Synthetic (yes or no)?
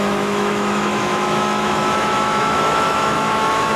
yes